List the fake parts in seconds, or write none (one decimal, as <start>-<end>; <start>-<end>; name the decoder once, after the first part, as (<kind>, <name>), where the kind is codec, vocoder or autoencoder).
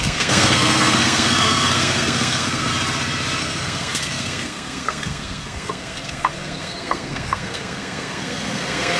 0.0-2.7 (codec, SNAC); 3.4-9.0